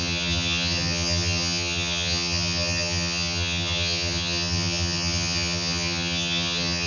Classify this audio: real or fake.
fake